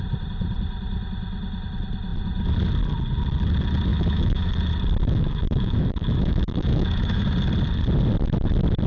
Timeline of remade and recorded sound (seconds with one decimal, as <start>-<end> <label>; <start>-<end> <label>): 0.0-3.9 recorded; 3.9-4.5 remade; 4.5-5.0 recorded; 5.0-7.2 remade; 7.2-8.9 recorded